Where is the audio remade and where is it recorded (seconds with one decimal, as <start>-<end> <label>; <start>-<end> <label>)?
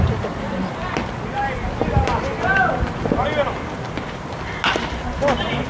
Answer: 0.0-5.7 recorded